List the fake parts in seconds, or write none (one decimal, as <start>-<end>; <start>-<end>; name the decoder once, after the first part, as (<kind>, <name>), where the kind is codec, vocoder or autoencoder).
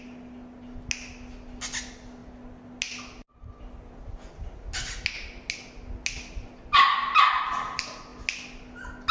none